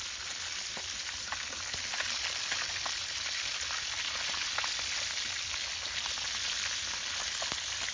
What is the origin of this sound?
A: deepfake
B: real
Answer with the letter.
B